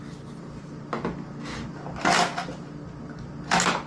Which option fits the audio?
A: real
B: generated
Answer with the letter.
A